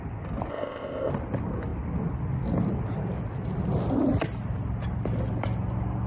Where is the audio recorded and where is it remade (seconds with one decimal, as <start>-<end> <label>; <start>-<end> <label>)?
0.0-0.5 recorded; 0.5-1.1 remade; 1.1-6.1 recorded